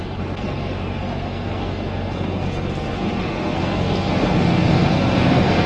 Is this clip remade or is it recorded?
remade